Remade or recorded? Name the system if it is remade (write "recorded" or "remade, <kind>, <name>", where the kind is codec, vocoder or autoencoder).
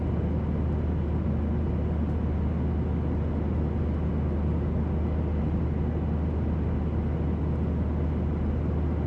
recorded